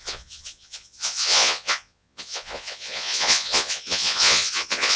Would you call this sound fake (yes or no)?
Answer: yes